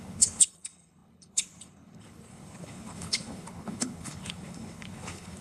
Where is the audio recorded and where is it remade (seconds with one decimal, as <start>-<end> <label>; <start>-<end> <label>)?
0.0-5.4 remade